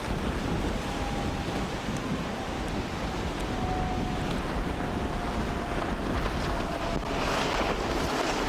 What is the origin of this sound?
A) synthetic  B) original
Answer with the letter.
B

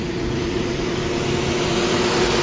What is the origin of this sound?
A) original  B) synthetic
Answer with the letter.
A